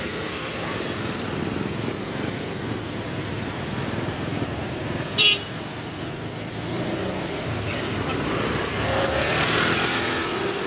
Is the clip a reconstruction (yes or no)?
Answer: yes